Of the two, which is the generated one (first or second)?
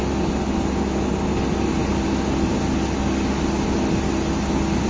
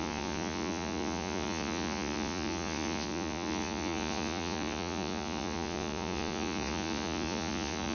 second